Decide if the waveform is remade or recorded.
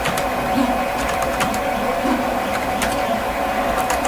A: recorded